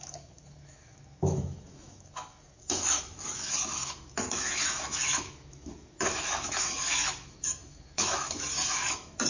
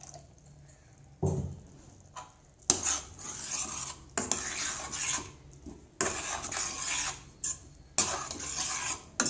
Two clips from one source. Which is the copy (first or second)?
first